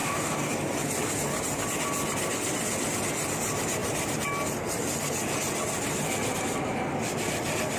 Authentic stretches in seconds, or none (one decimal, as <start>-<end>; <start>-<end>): 0.5-7.8